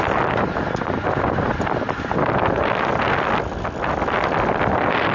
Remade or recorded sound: recorded